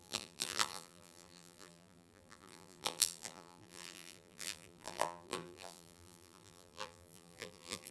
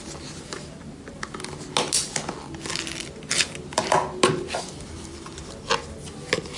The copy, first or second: first